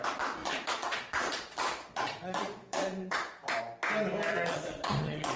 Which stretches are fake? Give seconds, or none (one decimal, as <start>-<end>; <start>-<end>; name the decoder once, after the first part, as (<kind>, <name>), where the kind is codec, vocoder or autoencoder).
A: 0.4-3.6 (vocoder, Vocos); 4.3-5.4